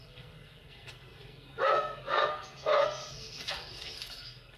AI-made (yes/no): yes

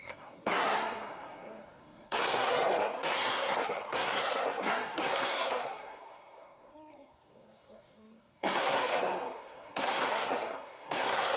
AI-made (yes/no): yes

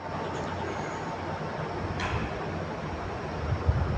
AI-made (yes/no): no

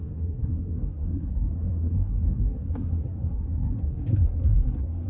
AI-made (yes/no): yes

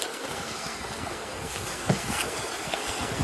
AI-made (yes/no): yes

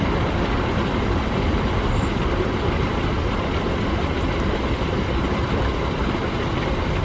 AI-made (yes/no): no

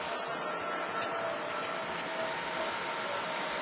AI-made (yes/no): no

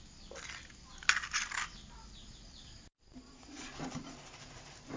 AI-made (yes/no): no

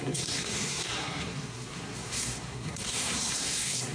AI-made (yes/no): yes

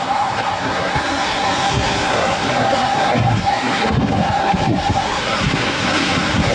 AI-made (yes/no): yes